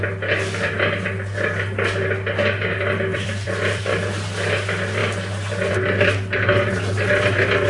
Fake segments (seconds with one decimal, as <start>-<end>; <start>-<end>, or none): 3.1-3.8